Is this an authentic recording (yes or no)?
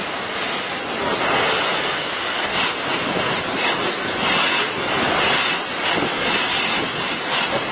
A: yes